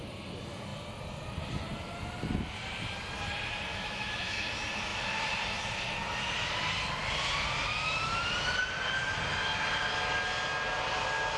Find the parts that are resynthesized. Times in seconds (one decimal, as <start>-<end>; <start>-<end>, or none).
3.7-4.5